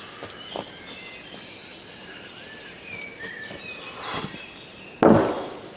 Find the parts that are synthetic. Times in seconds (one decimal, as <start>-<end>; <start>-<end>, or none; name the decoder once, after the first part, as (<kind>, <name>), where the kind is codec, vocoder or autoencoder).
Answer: none